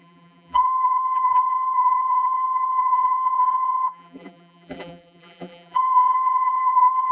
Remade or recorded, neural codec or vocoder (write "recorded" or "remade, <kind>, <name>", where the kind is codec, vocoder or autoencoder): remade, vocoder, BigVGAN v2